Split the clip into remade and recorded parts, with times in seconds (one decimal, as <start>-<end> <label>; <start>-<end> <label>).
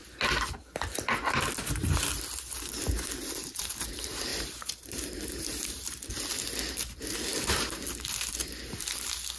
0.0-4.3 recorded; 4.3-6.1 remade; 6.1-9.4 recorded